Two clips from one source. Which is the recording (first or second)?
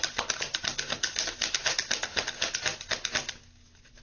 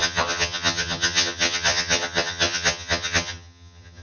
first